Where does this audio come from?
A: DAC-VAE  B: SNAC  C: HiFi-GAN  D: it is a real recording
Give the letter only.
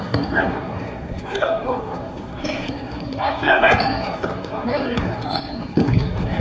B